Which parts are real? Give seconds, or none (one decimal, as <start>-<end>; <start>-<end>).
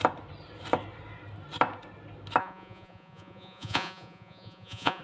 0.0-2.4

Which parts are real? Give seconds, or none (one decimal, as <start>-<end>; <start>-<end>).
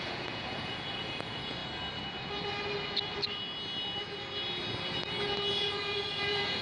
1.6-5.5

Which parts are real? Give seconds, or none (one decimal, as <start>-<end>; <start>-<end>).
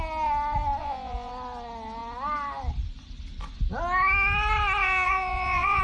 0.0-0.8; 1.3-4.8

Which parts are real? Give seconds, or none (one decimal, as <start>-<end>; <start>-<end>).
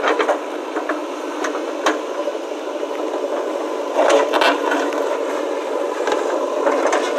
0.0-7.2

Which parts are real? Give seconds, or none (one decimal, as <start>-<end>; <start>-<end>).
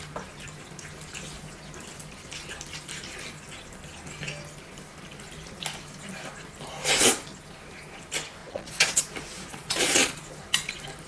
0.0-8.4; 9.0-9.5; 10.2-11.1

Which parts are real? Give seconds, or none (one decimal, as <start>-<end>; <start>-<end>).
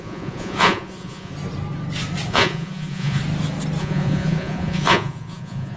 1.3-2.3; 3.2-3.8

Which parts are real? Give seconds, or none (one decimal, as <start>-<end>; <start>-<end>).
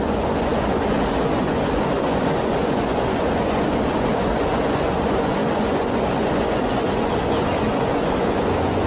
none